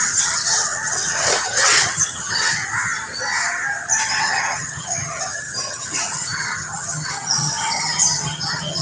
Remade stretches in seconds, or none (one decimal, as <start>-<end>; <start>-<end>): 0.0-2.6; 4.0-8.8